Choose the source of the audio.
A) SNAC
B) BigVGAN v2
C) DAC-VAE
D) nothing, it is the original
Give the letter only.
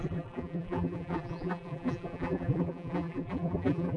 B